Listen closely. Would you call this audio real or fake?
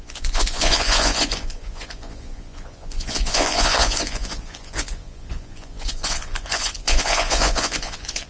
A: fake